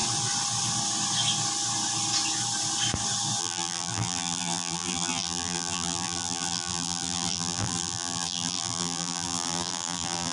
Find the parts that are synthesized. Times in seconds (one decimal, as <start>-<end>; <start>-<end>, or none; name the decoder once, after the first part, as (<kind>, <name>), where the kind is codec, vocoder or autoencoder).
3.4-10.3 (vocoder, BigVGAN v2)